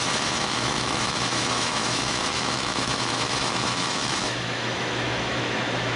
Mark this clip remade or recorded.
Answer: remade